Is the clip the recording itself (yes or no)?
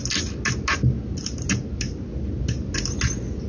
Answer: yes